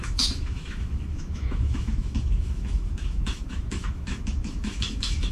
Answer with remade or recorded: remade